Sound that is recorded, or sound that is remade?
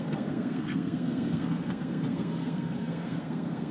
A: remade